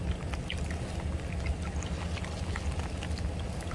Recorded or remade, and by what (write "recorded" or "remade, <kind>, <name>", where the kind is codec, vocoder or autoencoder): recorded